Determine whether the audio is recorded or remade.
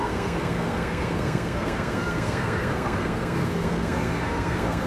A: remade